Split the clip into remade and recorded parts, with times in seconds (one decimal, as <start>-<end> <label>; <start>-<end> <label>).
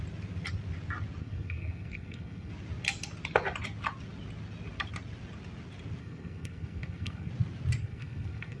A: 0.0-1.2 recorded; 1.2-2.5 remade; 2.5-6.0 recorded; 6.0-7.3 remade; 7.3-7.8 recorded; 7.8-8.6 remade